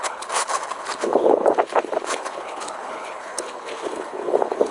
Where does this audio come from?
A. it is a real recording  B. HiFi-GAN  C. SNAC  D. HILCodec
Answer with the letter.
D